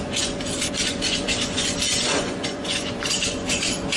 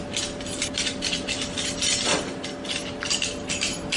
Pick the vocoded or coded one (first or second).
first